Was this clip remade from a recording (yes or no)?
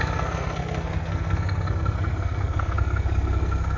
yes